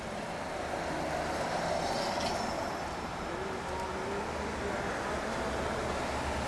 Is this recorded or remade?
recorded